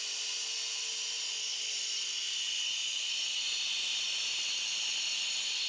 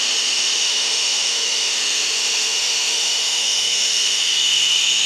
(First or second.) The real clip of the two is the first